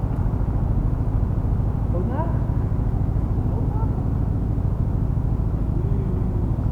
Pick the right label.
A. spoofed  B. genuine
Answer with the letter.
B